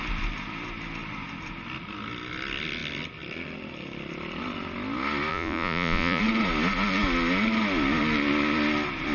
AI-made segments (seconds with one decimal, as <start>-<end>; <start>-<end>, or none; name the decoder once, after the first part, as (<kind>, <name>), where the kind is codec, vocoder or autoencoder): 5.3-6.2 (vocoder, Vocos)